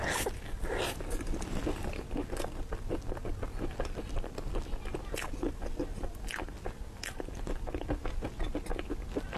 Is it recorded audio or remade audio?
recorded